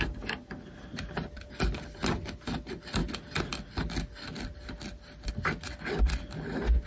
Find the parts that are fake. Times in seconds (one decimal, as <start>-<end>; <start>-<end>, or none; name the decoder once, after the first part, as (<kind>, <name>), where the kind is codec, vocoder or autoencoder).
none